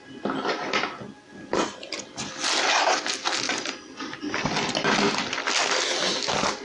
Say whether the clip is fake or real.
real